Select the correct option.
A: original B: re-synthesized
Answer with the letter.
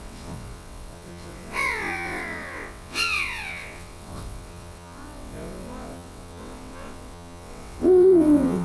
B